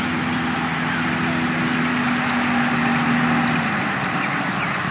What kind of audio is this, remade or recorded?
recorded